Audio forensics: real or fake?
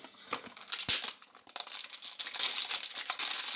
real